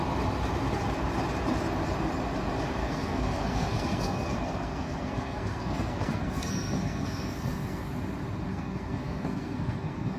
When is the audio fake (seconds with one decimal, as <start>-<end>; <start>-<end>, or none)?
2.8-7.9; 8.5-10.2